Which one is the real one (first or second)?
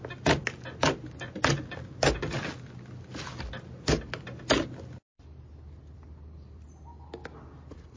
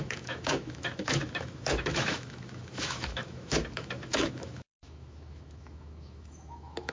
first